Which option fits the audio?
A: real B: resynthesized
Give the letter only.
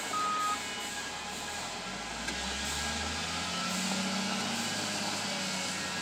A